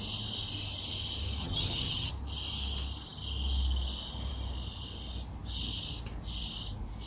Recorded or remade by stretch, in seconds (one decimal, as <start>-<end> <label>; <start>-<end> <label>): 0.0-1.4 recorded; 1.4-2.1 remade; 2.1-7.1 recorded